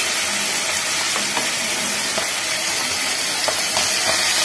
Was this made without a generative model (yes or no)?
yes